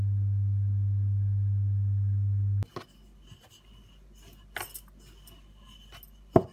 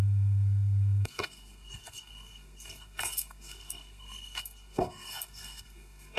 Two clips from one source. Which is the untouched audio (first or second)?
first